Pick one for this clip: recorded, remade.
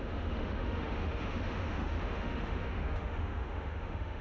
remade